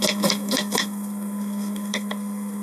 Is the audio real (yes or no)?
no